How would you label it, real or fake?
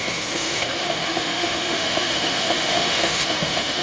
fake